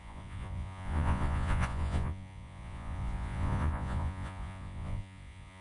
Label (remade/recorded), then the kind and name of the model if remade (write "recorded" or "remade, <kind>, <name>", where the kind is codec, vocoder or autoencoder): remade, vocoder, Vocos